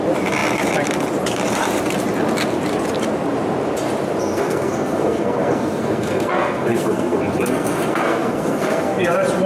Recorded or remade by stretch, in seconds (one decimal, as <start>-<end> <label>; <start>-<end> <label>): 0.0-4.2 recorded; 4.2-9.1 remade; 9.1-9.5 recorded